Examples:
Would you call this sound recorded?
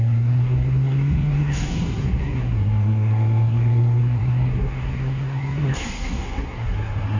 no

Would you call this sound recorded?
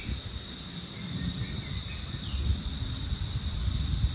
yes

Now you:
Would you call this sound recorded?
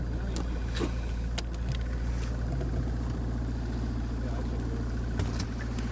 yes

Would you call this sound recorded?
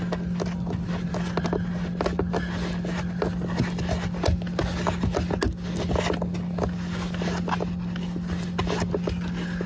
yes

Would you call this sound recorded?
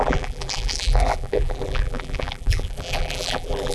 no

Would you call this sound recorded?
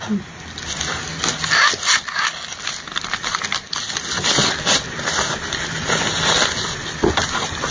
yes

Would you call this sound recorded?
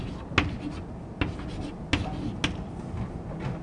yes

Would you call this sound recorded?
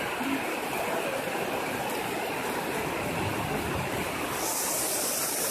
yes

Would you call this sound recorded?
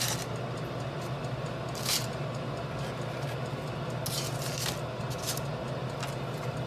yes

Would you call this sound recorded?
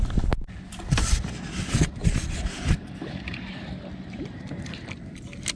yes